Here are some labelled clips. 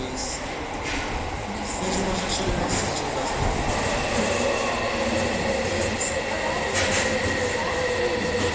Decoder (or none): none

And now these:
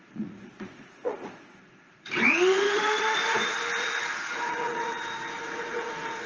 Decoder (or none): vocoder, Vocos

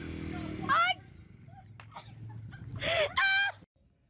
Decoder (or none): none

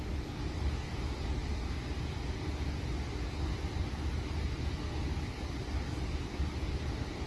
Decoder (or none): none